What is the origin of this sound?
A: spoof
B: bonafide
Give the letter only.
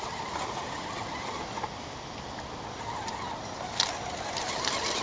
B